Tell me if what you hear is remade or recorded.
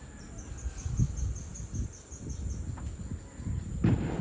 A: recorded